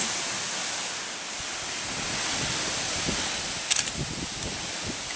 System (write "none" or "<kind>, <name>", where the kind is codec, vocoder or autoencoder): none